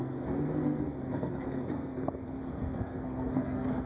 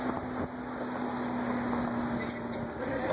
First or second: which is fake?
first